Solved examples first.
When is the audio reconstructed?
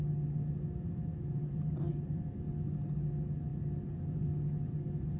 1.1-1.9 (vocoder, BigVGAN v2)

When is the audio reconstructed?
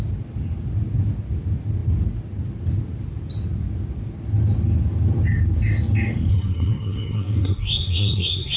6.3-8.6 (codec, SNAC)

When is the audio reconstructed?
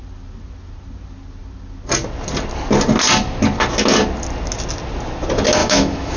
5.6-6.2 (autoencoder, DAC-VAE)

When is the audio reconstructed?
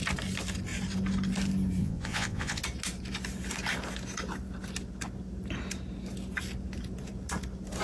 1.8-2.6 (vocoder, Vocos)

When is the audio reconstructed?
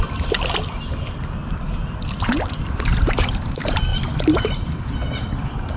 2.9-3.5 (vocoder, BigVGAN v2); 3.9-4.5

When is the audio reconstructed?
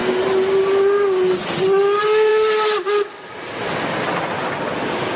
none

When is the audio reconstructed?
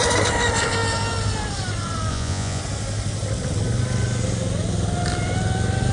2.1-2.6 (vocoder, Vocos)